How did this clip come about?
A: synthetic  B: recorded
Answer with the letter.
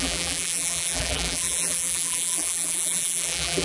A